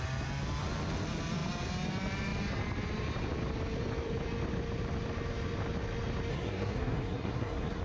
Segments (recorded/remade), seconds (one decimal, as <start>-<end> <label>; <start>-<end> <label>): 0.0-6.3 recorded; 6.3-7.8 remade